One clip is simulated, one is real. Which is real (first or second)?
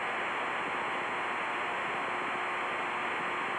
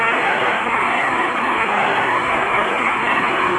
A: first